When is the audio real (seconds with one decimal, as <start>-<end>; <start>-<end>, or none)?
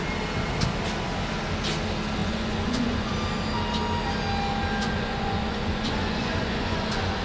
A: 0.0-2.2; 3.1-4.8